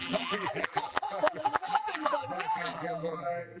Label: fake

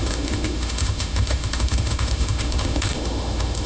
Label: fake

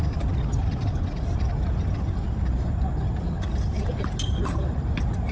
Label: real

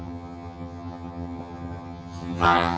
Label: fake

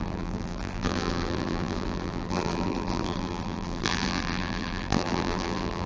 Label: fake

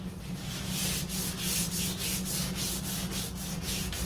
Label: real